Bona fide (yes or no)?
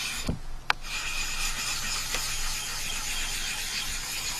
yes